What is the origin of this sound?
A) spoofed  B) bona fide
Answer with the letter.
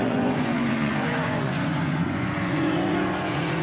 A